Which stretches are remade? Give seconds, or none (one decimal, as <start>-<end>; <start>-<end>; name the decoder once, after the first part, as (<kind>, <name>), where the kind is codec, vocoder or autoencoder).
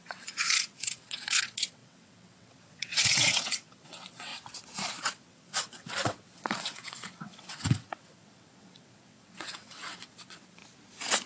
0.0-4.3 (vocoder, WaveNeXt); 5.0-10.6